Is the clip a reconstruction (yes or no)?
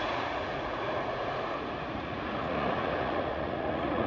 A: yes